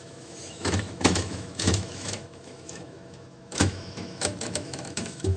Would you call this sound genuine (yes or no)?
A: no